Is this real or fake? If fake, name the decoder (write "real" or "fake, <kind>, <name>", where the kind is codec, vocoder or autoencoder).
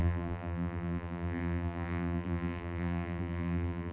fake, vocoder, BigVGAN v2